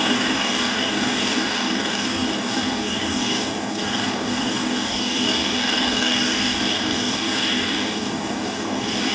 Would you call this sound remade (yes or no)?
yes